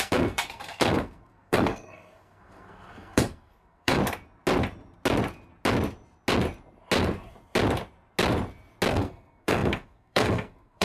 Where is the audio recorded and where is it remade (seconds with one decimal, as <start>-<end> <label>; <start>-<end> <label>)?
0.0-4.0 remade; 4.0-8.9 recorded; 8.9-10.8 remade